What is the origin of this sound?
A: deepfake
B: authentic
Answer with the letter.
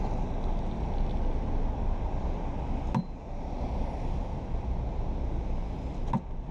B